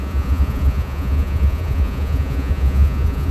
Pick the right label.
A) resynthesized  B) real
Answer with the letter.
A